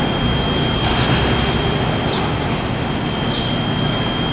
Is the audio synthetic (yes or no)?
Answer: no